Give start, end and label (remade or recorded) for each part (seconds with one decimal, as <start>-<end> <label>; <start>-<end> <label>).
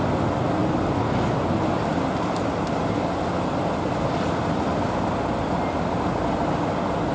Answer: 0.0-7.1 recorded